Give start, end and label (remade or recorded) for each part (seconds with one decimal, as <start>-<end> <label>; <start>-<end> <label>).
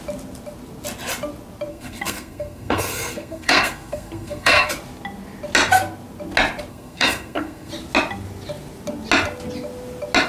0.0-1.7 recorded; 1.7-4.7 remade; 4.7-6.7 recorded; 6.7-7.7 remade; 7.7-10.3 recorded